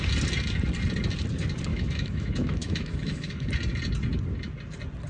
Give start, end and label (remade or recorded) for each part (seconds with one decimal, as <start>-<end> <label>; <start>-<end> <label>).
0.0-1.7 recorded; 1.7-3.5 remade; 3.5-5.1 recorded